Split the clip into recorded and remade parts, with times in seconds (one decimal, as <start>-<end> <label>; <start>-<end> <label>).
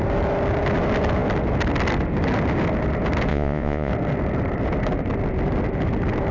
0.0-3.3 recorded; 3.3-3.9 remade; 3.9-6.3 recorded